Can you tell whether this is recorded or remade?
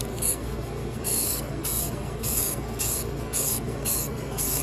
remade